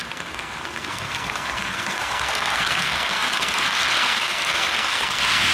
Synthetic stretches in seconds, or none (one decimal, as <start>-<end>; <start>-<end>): 0.0-5.5